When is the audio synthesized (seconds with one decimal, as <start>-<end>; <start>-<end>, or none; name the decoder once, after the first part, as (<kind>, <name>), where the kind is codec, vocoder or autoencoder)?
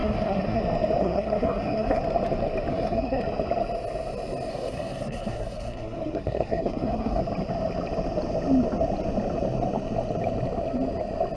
0.0-0.6 (codec, SNAC); 1.0-2.0; 2.7-3.2; 4.5-7.2